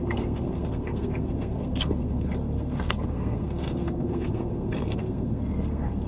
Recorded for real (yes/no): no